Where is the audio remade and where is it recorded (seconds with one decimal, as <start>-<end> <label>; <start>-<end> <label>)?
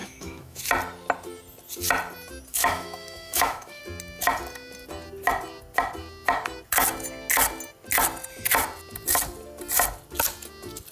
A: 0.0-0.6 remade; 0.6-2.5 recorded; 2.5-3.8 remade; 3.8-10.9 recorded